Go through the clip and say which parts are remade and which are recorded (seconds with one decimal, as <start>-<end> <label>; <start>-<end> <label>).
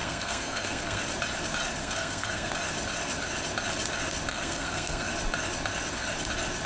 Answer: 0.0-1.0 remade; 1.0-1.8 recorded; 1.8-2.5 remade; 2.5-4.3 recorded; 4.3-5.1 remade; 5.1-6.7 recorded